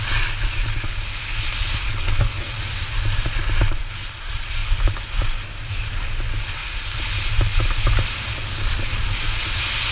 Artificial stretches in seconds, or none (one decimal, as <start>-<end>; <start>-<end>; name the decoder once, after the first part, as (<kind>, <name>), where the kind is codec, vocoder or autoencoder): 2.0-2.5 (codec, SNAC)